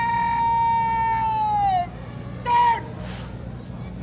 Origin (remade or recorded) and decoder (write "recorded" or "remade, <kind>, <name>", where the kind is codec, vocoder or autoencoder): recorded